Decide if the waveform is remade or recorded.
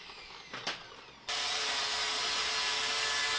recorded